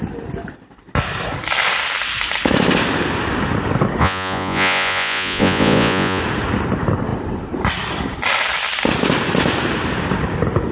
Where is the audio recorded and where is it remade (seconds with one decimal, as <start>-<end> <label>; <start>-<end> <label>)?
0.0-4.0 recorded; 4.0-6.2 remade; 6.2-10.7 recorded